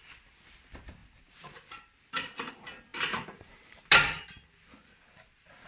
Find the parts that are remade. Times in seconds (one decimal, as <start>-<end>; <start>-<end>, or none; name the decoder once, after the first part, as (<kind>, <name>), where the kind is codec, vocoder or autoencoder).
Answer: 2.9-3.8 (vocoder, BigVGAN v2)